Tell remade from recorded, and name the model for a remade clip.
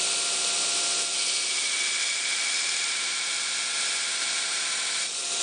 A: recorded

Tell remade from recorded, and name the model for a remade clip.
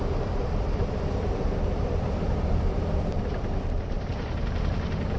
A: remade, vocoder, BigVGAN v2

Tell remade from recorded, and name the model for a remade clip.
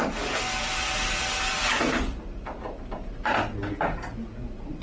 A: recorded